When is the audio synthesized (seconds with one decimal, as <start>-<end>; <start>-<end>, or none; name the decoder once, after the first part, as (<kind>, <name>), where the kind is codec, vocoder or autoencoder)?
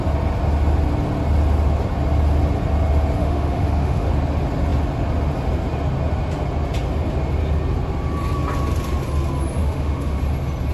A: 3.2-4.1 (autoencoder, DAC-VAE); 9.6-10.2